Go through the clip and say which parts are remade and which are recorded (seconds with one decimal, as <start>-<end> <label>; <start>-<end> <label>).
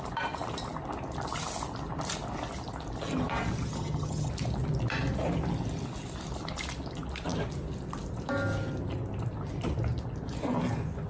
0.0-3.7 recorded; 3.7-4.3 remade; 4.3-11.1 recorded